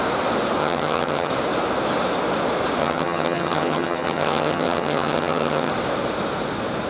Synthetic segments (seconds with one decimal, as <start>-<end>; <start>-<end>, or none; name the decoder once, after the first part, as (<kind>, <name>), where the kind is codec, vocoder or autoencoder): 0.6-1.3 (vocoder, HiFi-GAN); 2.8-5.7